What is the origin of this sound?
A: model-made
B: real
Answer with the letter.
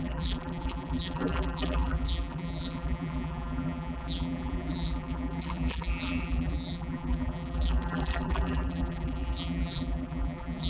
A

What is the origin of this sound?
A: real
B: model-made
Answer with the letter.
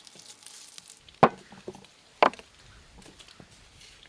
A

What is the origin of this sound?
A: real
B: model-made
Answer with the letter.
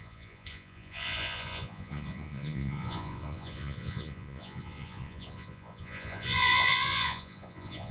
B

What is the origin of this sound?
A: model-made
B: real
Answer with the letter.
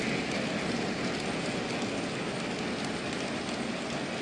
B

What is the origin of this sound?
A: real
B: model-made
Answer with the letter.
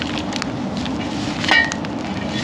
A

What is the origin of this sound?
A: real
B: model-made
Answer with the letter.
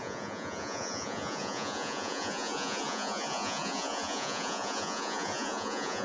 B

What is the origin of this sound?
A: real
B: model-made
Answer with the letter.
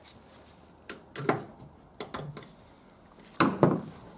A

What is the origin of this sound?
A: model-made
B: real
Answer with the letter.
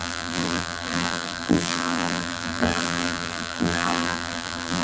A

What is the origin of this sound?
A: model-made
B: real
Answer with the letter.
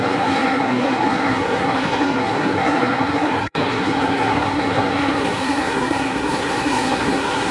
A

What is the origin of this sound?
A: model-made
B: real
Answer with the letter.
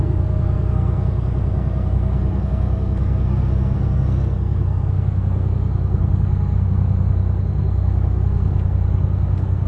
A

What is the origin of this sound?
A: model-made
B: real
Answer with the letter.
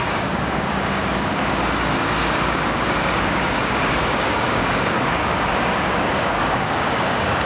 A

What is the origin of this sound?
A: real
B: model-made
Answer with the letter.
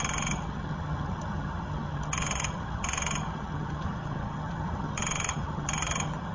B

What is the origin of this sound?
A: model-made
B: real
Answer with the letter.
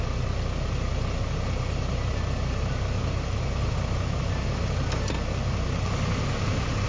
B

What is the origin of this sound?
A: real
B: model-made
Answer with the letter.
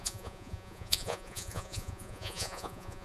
B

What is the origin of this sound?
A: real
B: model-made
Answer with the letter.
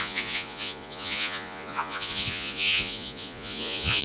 B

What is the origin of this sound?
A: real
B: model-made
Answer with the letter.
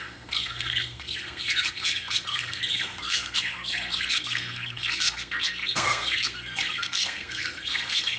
B